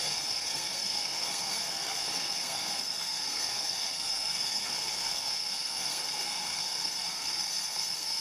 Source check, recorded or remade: remade